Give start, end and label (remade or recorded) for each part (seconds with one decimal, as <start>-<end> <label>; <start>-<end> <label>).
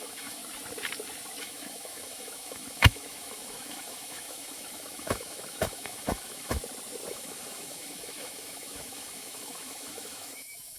0.0-0.4 remade; 0.4-1.4 recorded; 1.4-6.6 remade; 6.6-7.1 recorded; 7.1-10.8 remade